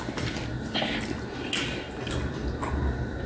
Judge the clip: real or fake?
real